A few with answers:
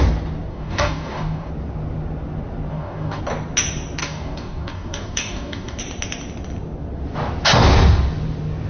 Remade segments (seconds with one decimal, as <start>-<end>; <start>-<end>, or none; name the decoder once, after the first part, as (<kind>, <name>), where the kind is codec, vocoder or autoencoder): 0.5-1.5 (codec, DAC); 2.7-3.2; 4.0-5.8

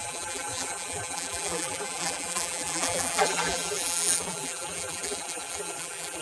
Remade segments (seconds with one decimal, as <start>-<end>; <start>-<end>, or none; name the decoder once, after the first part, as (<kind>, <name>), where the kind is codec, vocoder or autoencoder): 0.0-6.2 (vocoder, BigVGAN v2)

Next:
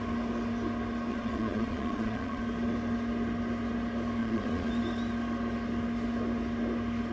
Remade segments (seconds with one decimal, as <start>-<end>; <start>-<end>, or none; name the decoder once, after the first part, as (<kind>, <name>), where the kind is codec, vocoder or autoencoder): 1.1-2.4 (vocoder, Vocos); 4.2-4.7

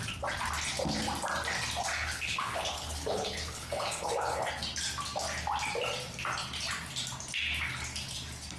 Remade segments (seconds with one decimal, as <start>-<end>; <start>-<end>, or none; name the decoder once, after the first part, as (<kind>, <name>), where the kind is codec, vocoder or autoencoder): 1.9-4.5 (codec, HILCodec)

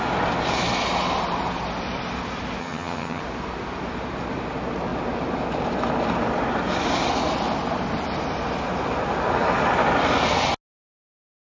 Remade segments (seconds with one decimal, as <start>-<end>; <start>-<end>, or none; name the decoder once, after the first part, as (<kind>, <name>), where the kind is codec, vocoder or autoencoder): 2.6-3.2 (vocoder, HiFi-GAN)